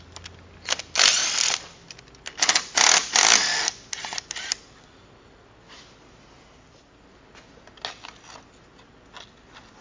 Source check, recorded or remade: recorded